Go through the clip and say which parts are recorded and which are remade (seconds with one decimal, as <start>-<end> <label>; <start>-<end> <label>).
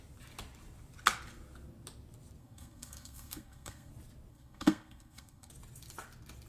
0.0-2.4 recorded; 2.4-3.9 remade; 3.9-4.3 recorded; 4.3-5.5 remade; 5.5-6.5 recorded